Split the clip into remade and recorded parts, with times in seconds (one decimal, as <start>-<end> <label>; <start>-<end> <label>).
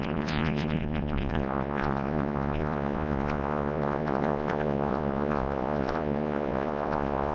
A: 0.0-7.3 remade